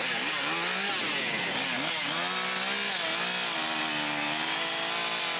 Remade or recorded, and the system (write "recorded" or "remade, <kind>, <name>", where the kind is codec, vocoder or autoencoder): recorded